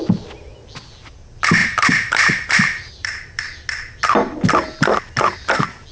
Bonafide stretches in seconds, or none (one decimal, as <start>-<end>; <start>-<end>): 0.0-1.6; 3.4-5.9